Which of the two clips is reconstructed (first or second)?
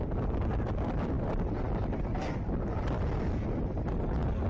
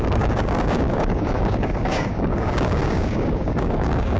second